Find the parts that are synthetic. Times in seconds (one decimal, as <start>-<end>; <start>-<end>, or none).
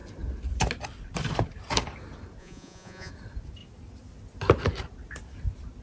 2.4-3.1